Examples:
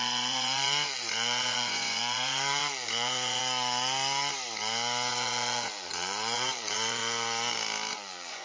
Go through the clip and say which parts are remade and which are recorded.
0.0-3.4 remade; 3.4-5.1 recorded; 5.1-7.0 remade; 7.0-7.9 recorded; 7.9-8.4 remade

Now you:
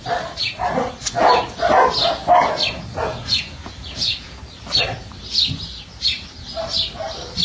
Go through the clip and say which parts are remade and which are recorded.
0.0-3.1 recorded; 3.1-4.4 remade; 4.4-7.4 recorded

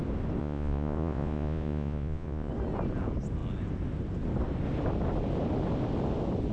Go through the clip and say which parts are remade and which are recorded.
0.0-0.4 recorded; 0.4-2.5 remade; 2.5-6.5 recorded

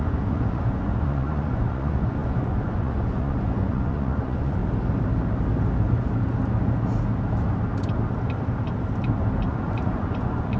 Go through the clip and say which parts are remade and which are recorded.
0.0-4.6 remade; 4.6-9.5 recorded; 9.5-10.6 remade

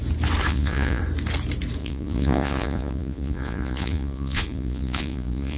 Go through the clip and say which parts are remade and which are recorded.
0.0-0.5 recorded; 0.5-1.0 remade; 1.0-1.8 recorded; 1.8-5.6 remade

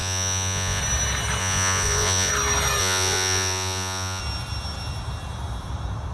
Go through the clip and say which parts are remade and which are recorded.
0.0-0.8 remade; 0.8-1.4 recorded; 1.4-2.3 remade; 2.3-2.8 recorded; 2.8-4.2 remade; 4.2-6.1 recorded

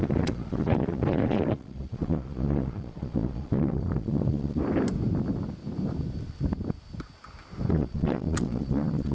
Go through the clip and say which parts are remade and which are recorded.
0.0-4.6 remade; 4.6-7.7 recorded; 7.7-9.1 remade

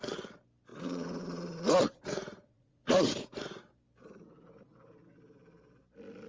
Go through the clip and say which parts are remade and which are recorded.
0.0-0.7 recorded; 0.7-3.6 remade; 3.6-6.3 recorded